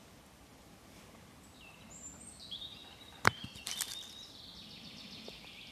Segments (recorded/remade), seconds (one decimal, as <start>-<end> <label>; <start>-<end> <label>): 0.0-0.5 remade; 0.5-1.7 recorded; 1.7-5.7 remade